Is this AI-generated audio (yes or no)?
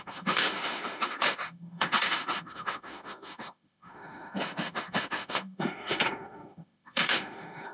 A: yes